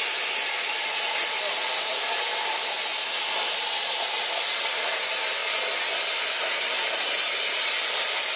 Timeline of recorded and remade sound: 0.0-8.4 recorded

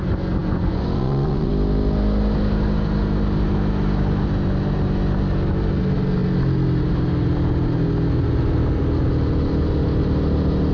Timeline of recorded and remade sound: 0.0-0.4 recorded; 0.4-1.5 remade; 1.5-10.7 recorded

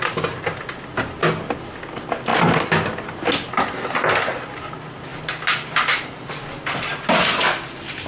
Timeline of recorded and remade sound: 0.0-8.1 recorded